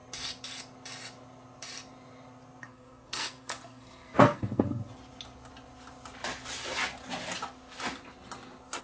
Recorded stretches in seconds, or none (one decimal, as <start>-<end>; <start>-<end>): 0.0-2.6; 4.8-8.8